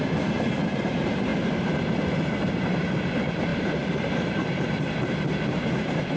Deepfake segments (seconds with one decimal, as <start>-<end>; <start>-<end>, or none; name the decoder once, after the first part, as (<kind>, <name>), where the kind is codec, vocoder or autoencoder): 0.0-6.2 (vocoder, BigVGAN v2)